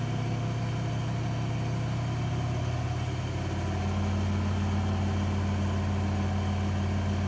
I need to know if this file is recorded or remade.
recorded